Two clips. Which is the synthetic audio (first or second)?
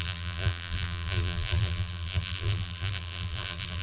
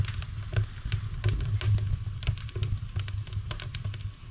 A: first